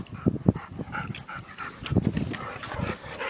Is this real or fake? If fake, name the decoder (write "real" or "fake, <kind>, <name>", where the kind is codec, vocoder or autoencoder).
real